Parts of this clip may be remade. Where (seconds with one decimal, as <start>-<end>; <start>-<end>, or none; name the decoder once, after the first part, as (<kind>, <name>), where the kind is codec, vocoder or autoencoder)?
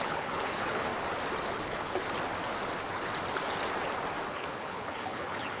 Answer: 0.0-0.9 (codec, HILCodec); 1.6-2.0; 4.3-5.6